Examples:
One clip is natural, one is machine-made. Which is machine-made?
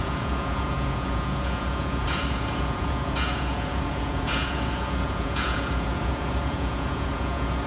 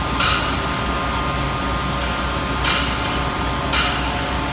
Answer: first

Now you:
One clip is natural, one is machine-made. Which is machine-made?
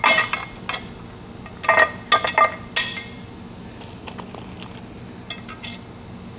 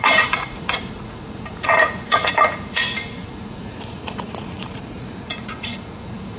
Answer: second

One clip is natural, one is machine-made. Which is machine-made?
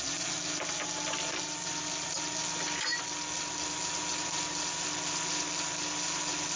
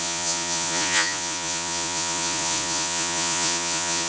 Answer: second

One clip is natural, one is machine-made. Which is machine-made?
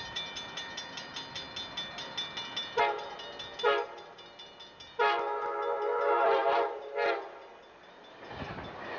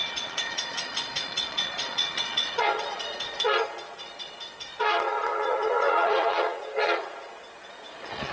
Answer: second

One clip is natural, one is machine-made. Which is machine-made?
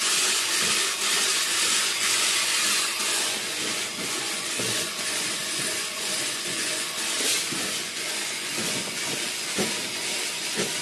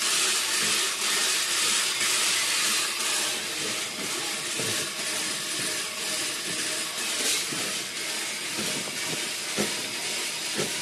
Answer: first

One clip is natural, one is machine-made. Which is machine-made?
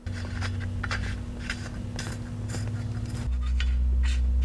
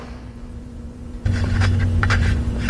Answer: second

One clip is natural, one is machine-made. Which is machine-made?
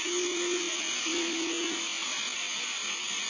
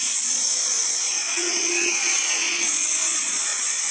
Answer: second